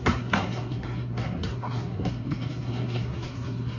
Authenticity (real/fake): fake